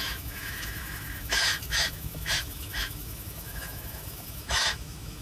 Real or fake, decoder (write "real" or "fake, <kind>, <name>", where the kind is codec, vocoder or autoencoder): fake, autoencoder, DAC-VAE